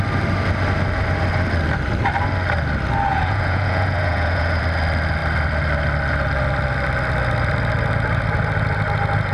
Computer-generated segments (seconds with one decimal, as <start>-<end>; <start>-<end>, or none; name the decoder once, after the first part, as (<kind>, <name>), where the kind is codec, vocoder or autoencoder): 3.1-4.6 (vocoder, Vocos)